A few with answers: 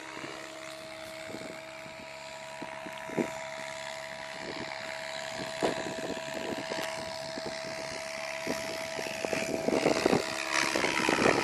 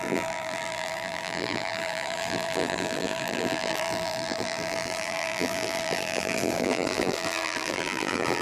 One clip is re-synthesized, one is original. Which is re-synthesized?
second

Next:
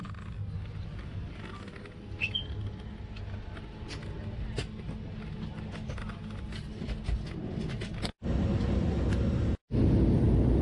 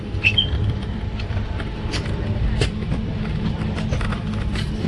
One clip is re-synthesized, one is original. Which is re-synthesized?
second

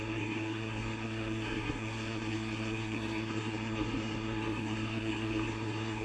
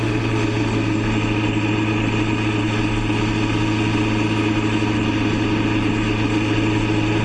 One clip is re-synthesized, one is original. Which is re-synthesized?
first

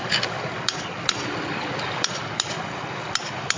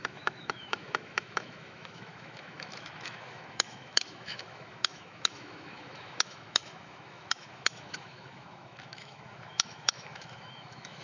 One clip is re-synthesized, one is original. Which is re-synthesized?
second